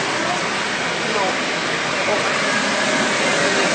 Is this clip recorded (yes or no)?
yes